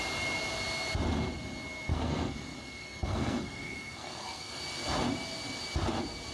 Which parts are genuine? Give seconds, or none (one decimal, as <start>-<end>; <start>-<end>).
0.0-1.9; 4.6-6.3